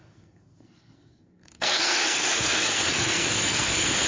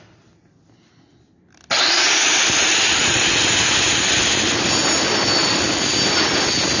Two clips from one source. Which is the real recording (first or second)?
second